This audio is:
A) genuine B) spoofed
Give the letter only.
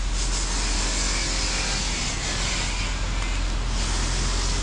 A